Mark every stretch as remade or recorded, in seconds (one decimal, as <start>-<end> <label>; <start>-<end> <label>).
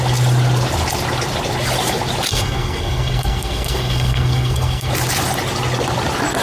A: 0.0-2.3 recorded; 2.3-4.9 remade; 4.9-6.4 recorded